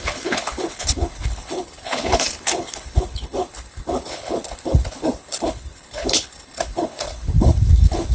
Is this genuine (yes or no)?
no